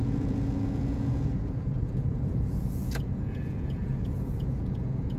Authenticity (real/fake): fake